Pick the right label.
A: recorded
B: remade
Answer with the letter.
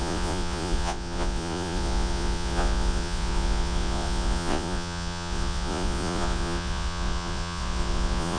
B